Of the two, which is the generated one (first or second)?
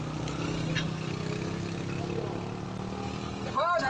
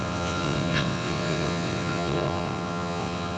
second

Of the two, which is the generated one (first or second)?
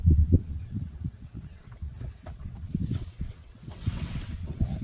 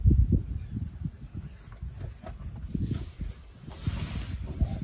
first